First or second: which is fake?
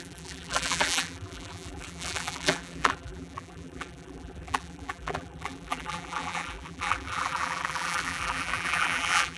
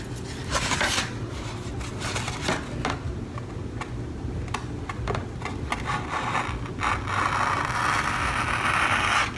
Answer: first